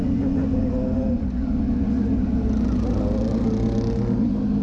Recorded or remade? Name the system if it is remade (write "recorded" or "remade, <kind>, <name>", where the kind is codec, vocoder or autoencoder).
recorded